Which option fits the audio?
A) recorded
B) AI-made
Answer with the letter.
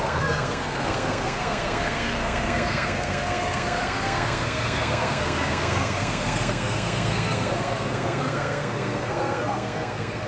B